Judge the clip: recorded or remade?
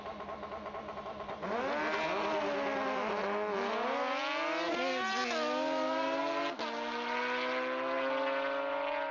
recorded